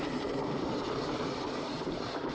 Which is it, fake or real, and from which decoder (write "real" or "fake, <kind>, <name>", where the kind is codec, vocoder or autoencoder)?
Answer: fake, vocoder, BigVGAN v2